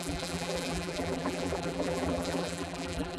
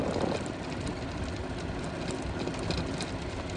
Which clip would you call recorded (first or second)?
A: second